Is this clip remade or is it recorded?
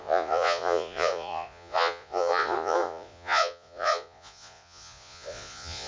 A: remade